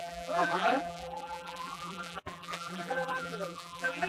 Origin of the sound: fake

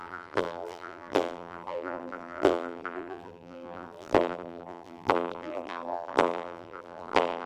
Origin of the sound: fake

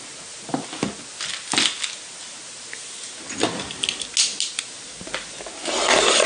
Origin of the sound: real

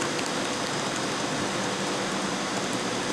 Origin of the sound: real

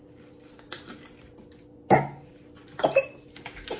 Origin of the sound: real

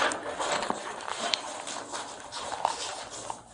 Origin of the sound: fake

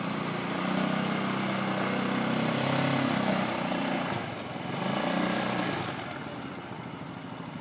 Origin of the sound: real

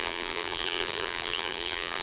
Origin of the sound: fake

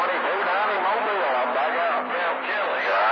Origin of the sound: fake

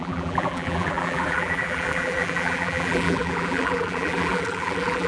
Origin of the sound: fake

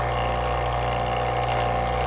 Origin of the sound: real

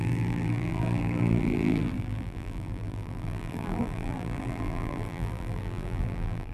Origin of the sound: fake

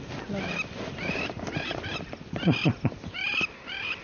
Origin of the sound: real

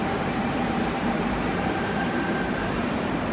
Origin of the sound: fake